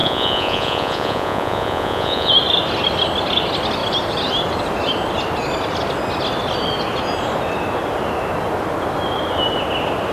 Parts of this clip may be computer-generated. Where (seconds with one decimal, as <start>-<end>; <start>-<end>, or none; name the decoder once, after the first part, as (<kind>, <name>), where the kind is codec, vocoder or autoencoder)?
0.0-2.3 (vocoder, Vocos)